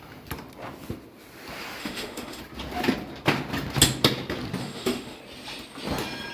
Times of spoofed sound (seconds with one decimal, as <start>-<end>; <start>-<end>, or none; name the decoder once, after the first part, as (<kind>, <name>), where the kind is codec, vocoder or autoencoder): 1.8-2.4 (autoencoder, DAC-VAE); 4.6-5.2